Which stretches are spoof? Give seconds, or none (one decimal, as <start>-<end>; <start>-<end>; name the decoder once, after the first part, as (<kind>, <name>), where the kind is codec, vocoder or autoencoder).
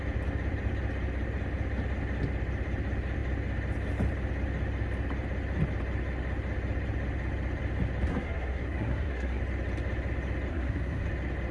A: 8.1-9.4 (codec, SNAC); 10.5-11.1